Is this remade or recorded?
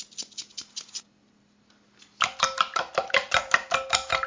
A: recorded